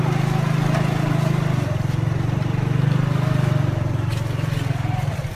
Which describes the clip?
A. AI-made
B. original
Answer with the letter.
B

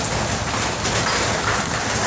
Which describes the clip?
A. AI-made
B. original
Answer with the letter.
B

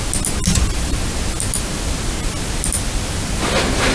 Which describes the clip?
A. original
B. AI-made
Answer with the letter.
A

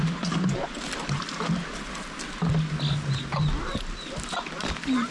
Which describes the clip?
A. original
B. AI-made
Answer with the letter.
A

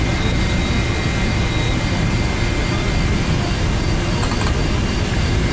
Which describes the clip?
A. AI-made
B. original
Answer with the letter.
B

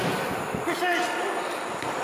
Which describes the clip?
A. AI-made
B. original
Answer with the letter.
B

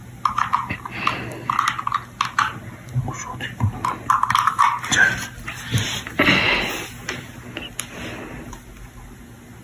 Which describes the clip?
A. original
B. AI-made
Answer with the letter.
A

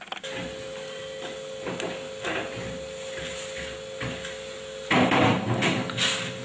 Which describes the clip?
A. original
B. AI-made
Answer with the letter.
A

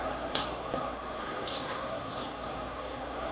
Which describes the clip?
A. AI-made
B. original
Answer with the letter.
A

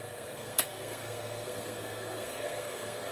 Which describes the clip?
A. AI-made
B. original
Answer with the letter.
A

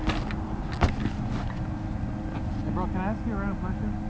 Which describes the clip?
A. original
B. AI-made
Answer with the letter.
A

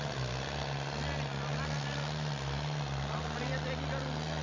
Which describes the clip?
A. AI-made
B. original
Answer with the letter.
B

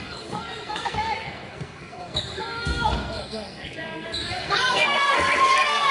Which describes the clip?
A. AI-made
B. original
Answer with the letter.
A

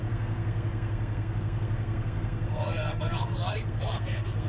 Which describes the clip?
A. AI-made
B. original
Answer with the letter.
A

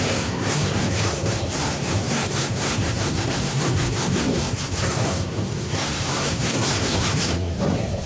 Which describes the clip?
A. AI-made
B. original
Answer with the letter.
A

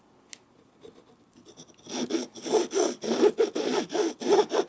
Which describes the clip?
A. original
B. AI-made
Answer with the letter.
A